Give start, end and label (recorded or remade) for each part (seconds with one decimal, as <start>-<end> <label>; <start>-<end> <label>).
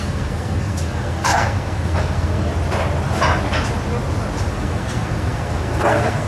0.0-2.5 remade; 2.5-4.5 recorded; 4.5-6.3 remade